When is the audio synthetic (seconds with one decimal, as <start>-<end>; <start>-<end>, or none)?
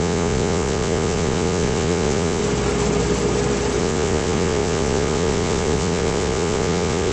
0.0-2.4; 3.8-7.1